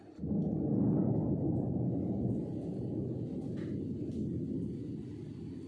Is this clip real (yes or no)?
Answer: yes